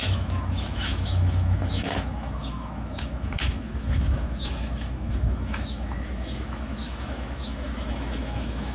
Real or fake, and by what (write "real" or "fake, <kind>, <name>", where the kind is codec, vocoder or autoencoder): fake, autoencoder, DAC-VAE